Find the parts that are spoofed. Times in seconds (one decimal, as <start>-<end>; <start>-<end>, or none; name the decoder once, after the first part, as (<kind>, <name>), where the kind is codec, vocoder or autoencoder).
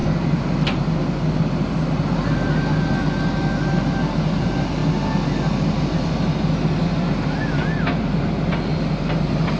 none